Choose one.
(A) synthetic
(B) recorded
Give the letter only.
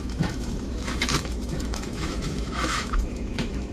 A